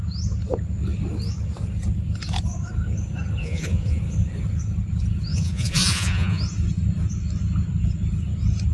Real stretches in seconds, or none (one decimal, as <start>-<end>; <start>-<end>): 0.0-3.4; 4.0-5.3; 6.4-8.7

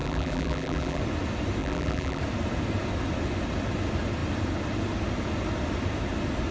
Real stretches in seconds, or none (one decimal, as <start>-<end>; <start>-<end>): 1.0-1.6; 2.2-6.5

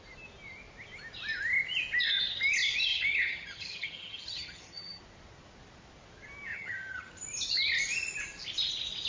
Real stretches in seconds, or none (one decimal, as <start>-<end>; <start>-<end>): 0.0-2.9; 5.0-6.5; 7.1-9.1